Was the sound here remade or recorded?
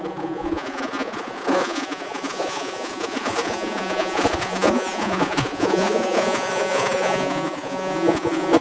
remade